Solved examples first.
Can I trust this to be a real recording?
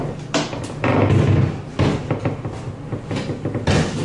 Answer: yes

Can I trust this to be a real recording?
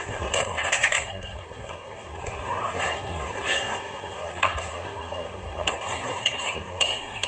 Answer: no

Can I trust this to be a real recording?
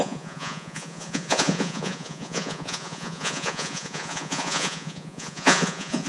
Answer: no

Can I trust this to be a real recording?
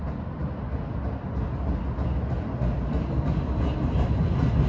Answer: yes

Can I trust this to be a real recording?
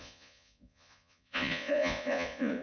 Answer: no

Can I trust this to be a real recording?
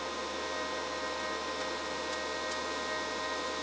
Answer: yes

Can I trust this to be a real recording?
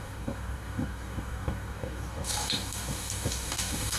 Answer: no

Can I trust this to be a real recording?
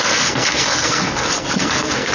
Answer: no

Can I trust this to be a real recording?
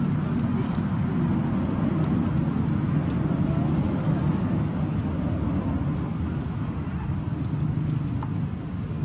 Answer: yes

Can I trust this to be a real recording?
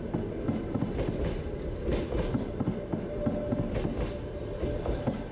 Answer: yes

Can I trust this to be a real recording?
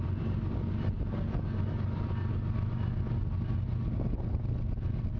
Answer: yes